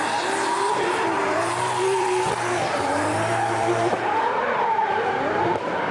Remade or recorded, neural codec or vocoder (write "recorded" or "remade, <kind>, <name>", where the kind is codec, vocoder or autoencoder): remade, vocoder, BigVGAN v2